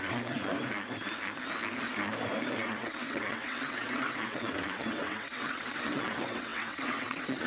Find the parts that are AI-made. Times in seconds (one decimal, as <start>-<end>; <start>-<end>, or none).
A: 0.0-0.5; 2.5-7.5